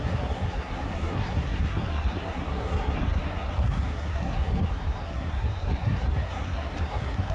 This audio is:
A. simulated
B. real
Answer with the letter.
A